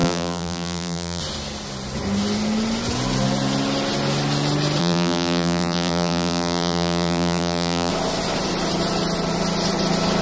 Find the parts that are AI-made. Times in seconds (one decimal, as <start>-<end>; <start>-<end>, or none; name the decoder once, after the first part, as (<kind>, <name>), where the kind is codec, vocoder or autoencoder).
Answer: 0.0-1.2 (vocoder, BigVGAN v2); 4.8-7.9